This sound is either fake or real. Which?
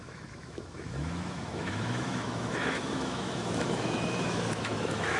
fake